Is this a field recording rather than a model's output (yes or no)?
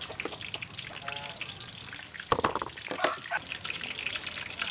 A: yes